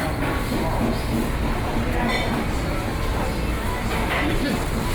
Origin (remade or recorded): recorded